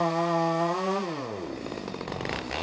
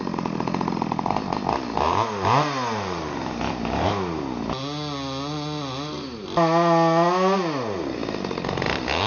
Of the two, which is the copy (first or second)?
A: first